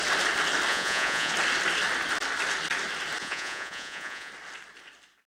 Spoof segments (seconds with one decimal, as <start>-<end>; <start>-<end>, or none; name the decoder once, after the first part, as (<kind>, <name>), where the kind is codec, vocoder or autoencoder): 0.7-1.3 (vocoder, Vocos); 3.2-4.3